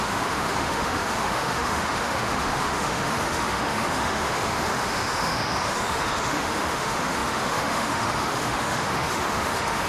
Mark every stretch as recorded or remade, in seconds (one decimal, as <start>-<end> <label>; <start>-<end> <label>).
0.0-9.9 remade